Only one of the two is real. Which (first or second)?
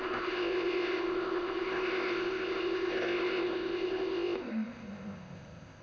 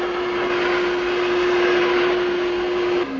second